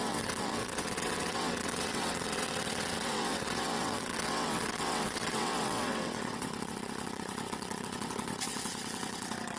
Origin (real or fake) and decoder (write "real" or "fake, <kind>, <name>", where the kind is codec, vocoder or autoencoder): fake, vocoder, WaveNeXt